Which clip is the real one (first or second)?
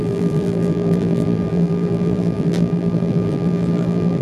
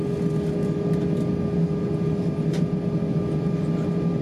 second